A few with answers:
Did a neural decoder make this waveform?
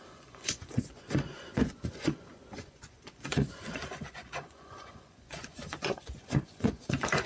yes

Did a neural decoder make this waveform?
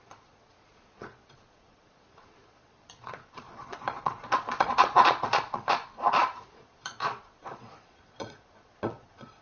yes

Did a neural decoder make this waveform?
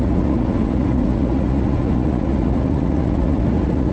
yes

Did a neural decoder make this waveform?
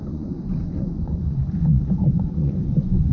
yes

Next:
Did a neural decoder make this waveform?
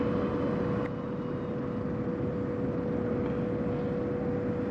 no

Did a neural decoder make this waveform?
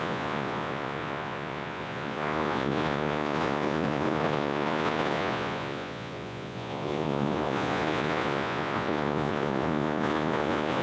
yes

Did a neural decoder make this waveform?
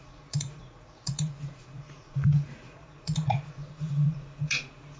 yes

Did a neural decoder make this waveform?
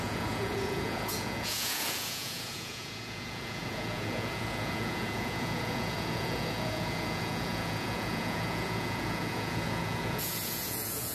yes